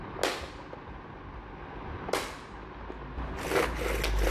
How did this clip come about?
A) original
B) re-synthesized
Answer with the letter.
A